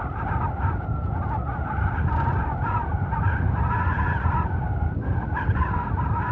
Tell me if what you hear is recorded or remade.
recorded